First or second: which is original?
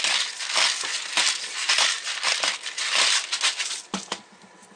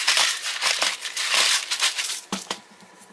first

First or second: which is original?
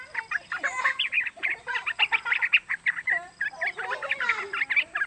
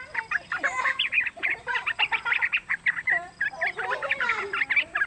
first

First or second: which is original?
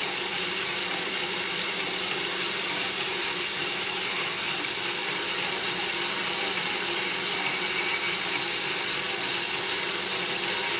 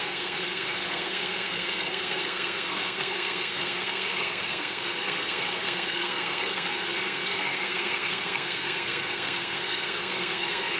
first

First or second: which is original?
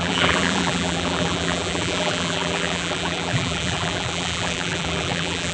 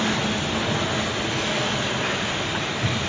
second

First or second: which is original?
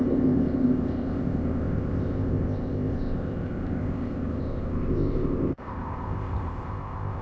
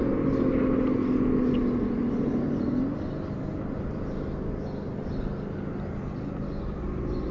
second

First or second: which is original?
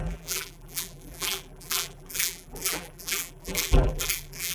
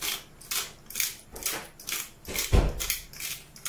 second